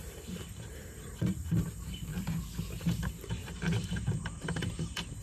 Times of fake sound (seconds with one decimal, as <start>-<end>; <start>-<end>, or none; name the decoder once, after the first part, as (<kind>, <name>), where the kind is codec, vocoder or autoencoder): 0.0-2.1 (vocoder, BigVGAN v2); 2.8-5.2